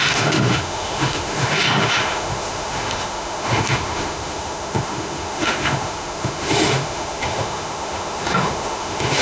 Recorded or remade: remade